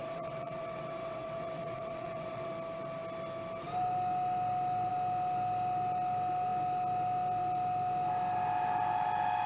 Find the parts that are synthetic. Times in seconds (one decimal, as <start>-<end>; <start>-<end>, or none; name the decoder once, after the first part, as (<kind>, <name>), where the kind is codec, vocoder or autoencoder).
0.0-2.5 (vocoder, WaveNeXt)